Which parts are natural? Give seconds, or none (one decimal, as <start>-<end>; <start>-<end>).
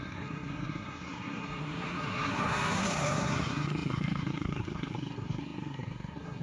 none